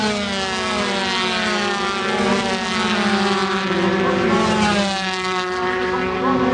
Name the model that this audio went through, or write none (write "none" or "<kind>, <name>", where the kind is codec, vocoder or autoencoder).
none